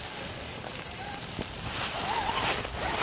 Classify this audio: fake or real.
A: real